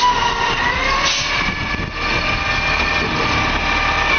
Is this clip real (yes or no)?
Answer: yes